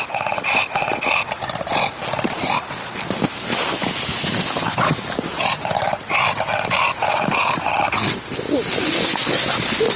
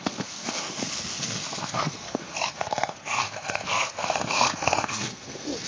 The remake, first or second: second